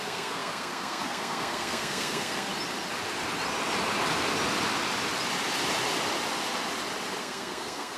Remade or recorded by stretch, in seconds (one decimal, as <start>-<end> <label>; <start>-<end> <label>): 0.0-2.5 remade; 2.5-7.2 recorded; 7.2-8.0 remade